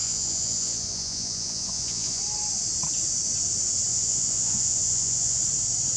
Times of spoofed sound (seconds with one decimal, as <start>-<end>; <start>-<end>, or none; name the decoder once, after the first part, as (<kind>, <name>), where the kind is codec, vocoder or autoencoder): 0.0-2.2 (vocoder, Vocos); 3.9-5.4